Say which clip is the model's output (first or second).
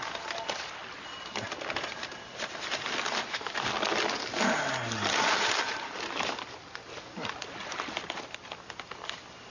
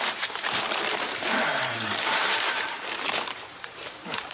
second